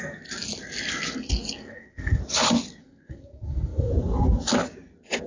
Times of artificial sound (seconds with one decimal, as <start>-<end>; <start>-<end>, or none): 1.6-2.2; 2.8-3.9